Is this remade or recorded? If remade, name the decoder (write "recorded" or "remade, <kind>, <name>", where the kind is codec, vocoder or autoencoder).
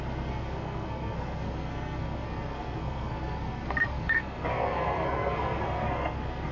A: remade, codec, SNAC